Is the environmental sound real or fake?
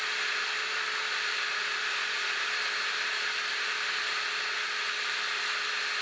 real